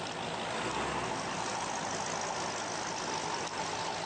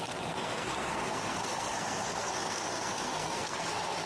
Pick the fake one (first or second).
second